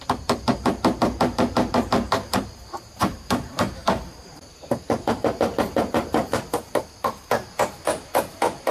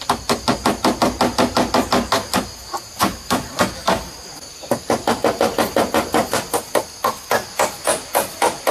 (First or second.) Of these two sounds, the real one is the second